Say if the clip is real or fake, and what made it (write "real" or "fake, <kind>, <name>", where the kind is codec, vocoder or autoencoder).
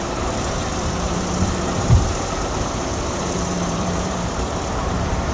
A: fake, vocoder, BigVGAN v2